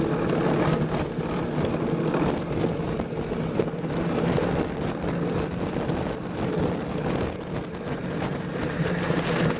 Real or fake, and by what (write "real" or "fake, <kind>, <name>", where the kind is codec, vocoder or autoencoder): real